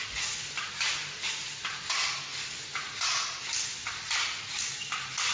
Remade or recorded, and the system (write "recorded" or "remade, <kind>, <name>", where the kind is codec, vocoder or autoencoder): recorded